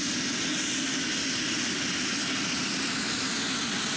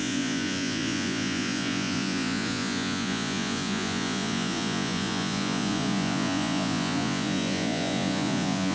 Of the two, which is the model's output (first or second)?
second